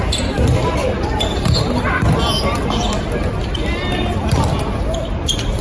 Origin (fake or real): real